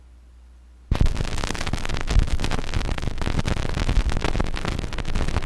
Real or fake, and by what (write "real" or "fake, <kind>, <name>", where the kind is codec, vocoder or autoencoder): real